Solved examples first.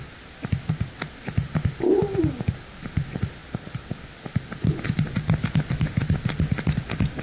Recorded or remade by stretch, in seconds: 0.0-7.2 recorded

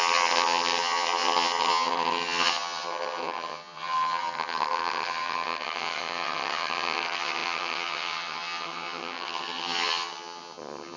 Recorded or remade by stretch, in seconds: 0.0-11.0 remade

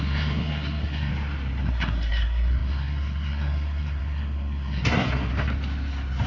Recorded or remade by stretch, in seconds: 0.0-1.1 remade; 1.1-1.6 recorded; 1.6-5.3 remade; 5.3-6.3 recorded

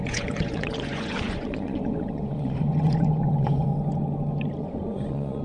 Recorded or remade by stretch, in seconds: 0.0-3.7 remade; 3.7-4.6 recorded; 4.6-5.4 remade

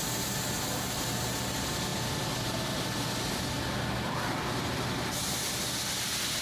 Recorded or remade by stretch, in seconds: 0.0-6.4 recorded

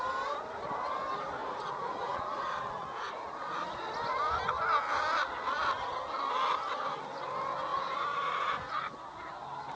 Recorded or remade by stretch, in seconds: 0.0-1.4 recorded; 1.4-3.8 remade; 3.8-7.7 recorded; 7.7-8.8 remade; 8.8-9.8 recorded